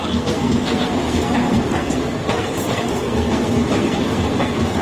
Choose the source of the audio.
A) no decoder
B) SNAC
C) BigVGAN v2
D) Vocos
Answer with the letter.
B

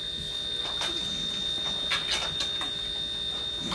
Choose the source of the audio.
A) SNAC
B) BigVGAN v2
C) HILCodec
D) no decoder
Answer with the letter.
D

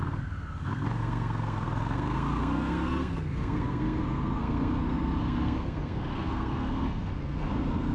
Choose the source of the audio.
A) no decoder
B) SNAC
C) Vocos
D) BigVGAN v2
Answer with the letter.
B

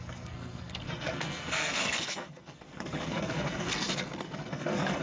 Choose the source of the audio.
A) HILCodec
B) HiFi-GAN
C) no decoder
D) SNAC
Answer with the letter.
D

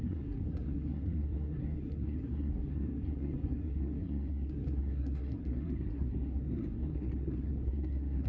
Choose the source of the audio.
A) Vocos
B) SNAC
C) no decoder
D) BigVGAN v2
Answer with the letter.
B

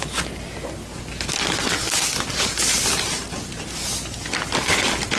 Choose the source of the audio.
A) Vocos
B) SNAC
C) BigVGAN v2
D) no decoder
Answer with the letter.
D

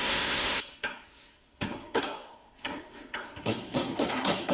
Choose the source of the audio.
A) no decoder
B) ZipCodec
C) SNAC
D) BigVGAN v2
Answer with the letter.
C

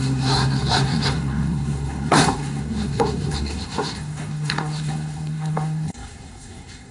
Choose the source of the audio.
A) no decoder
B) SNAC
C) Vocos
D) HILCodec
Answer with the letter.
B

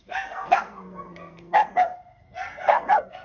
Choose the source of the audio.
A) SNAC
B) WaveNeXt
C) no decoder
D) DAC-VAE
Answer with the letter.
A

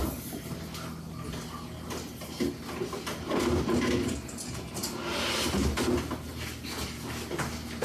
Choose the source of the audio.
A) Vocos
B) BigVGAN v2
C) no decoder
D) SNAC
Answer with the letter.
C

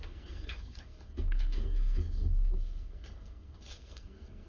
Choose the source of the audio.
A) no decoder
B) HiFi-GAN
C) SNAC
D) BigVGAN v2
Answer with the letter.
C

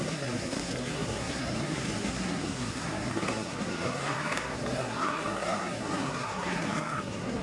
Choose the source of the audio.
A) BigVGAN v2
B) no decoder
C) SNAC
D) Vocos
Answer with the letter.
C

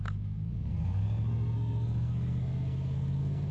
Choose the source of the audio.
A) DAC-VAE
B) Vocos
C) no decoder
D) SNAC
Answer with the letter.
D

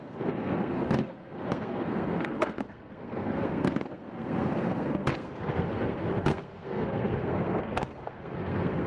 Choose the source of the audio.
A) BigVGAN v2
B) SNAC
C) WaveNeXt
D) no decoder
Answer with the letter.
B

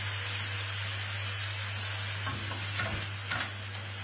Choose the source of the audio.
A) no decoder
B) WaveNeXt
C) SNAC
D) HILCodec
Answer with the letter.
A